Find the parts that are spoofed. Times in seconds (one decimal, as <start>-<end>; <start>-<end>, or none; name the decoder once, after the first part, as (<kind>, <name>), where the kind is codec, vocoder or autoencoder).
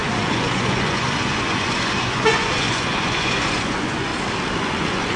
0.0-4.1 (vocoder, Vocos); 4.6-5.2